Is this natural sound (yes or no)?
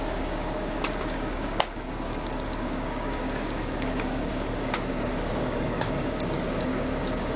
no